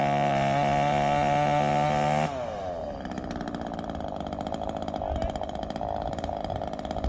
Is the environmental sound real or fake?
real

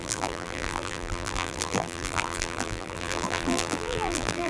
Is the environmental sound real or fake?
fake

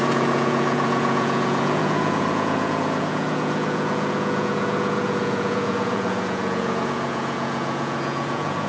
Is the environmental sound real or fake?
fake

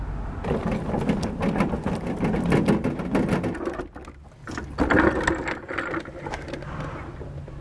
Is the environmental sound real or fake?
real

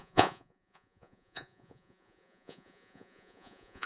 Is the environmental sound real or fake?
fake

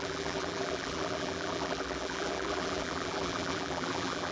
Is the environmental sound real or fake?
fake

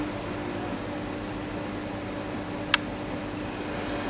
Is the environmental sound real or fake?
real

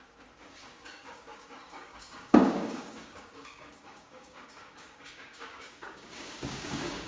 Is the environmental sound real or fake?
fake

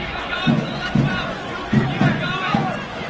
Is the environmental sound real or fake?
fake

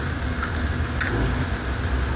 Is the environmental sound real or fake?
real